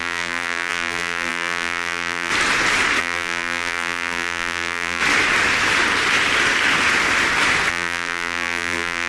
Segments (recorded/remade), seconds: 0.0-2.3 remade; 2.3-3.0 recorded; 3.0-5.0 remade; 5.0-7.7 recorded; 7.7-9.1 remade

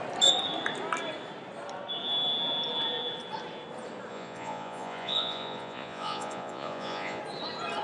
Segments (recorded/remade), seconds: 0.0-4.1 recorded; 4.1-7.2 remade; 7.2-7.8 recorded

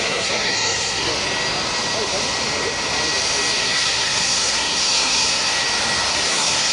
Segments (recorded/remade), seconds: 0.0-1.1 remade; 1.1-3.6 recorded; 3.6-5.5 remade; 5.5-6.1 recorded; 6.1-6.7 remade